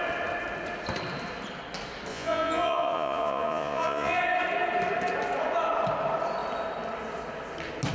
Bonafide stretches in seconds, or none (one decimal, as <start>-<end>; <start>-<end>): 0.0-2.1; 4.2-7.9